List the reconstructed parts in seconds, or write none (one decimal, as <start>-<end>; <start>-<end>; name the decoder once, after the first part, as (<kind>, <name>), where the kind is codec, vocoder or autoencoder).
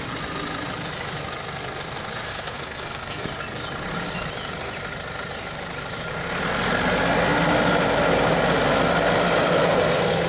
2.3-3.2 (codec, SNAC)